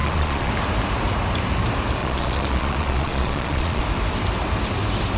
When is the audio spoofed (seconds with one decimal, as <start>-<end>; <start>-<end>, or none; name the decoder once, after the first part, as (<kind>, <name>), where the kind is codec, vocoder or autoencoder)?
0.0-0.5 (vocoder, Vocos); 2.0-3.8